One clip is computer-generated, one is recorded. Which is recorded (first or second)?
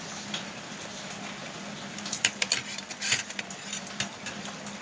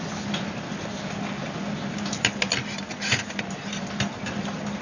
second